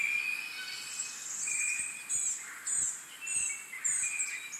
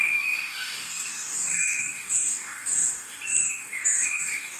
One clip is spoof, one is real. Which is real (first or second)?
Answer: first